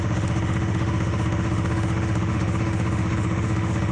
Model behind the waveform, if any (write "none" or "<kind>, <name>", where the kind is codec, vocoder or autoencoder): autoencoder, DAC-VAE